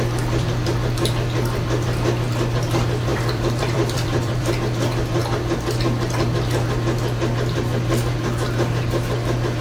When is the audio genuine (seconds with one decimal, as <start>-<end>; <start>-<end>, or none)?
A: 0.0-3.1; 4.5-9.6

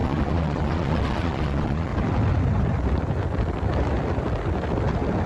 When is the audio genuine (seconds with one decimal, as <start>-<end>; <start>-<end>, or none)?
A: 1.9-5.3